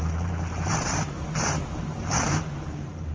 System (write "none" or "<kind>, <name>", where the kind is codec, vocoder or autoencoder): vocoder, BigVGAN v2